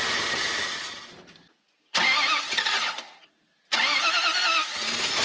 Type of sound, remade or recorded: recorded